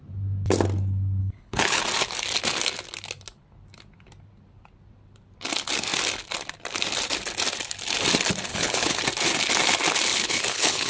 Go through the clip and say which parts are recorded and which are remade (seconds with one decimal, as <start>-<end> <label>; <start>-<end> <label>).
0.0-1.2 recorded; 1.2-1.8 remade; 1.8-8.5 recorded; 8.5-9.0 remade; 9.0-10.1 recorded; 10.1-10.9 remade